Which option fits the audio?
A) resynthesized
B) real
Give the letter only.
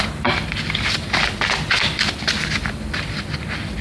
A